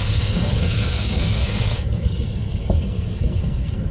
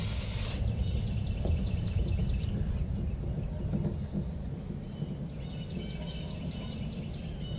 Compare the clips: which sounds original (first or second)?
second